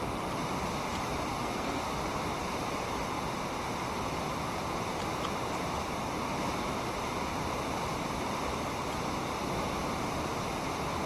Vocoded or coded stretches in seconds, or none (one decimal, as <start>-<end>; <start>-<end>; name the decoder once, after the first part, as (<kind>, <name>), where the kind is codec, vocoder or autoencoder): 1.3-1.8 (codec, SNAC)